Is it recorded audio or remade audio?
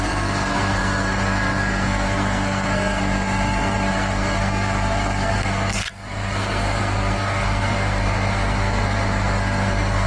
remade